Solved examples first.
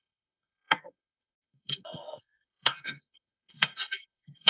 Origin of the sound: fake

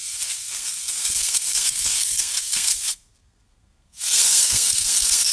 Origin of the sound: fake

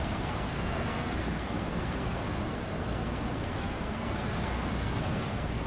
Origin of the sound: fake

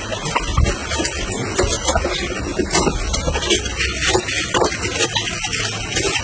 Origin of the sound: real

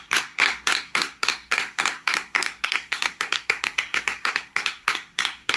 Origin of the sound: fake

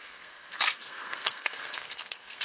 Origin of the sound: fake